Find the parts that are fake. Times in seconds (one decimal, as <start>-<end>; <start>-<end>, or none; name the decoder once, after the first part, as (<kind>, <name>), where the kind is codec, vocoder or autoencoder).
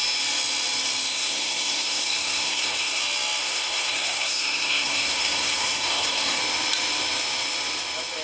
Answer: 1.1-3.0 (codec, SNAC); 3.4-6.4